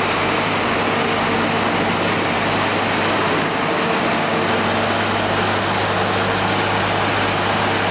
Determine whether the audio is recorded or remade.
recorded